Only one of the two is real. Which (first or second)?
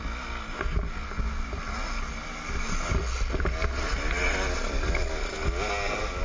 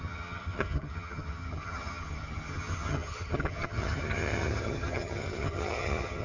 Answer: first